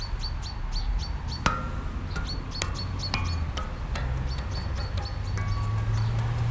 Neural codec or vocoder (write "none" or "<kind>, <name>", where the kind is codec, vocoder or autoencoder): none